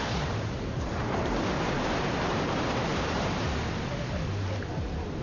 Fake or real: fake